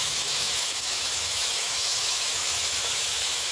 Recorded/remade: remade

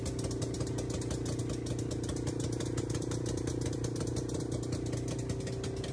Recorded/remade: recorded